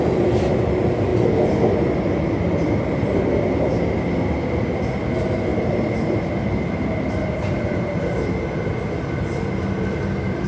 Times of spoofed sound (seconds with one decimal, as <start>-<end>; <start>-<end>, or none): 5.5-8.3